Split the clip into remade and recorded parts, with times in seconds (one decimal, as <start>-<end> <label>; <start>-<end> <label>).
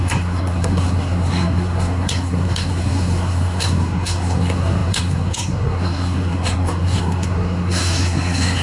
0.0-8.6 remade